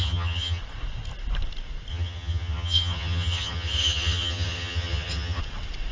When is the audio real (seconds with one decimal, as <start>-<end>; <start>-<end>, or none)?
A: 0.6-1.9; 5.4-5.9

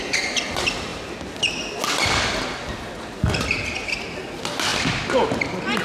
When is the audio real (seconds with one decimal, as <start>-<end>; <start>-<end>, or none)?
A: 0.0-5.8

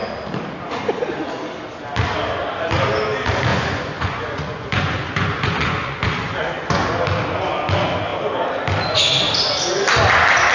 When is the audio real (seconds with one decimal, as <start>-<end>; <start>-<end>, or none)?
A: 0.0-3.5; 6.8-10.5

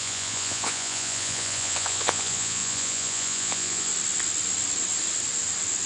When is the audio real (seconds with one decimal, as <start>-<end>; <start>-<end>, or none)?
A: 3.9-5.9

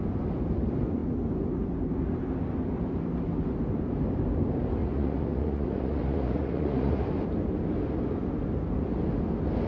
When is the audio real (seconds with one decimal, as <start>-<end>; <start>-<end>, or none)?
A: 0.0-4.8; 7.0-9.7

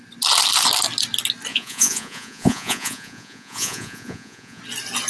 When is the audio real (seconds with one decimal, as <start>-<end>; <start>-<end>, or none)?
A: 0.0-1.5; 4.6-5.1